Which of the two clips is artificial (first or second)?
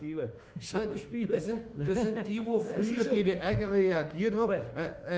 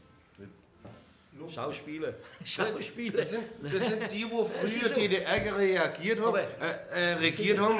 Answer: first